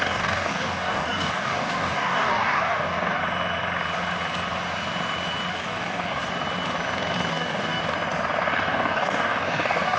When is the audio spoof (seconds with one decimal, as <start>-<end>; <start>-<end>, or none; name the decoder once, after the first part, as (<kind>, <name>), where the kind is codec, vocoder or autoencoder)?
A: 0.0-3.2 (codec, DAC); 5.5-6.2; 7.3-7.8; 8.6-10.0